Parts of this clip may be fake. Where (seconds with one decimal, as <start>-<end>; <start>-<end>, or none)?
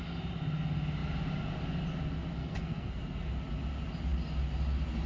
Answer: 2.4-3.0